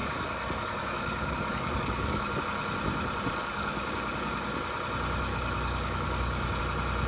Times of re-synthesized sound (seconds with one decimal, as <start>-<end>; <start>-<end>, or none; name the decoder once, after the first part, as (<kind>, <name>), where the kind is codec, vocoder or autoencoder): 0.0-2.4 (codec, DAC); 3.4-4.6; 5.3-6.6